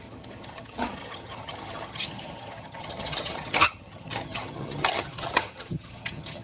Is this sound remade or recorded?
remade